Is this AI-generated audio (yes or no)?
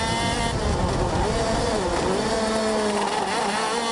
no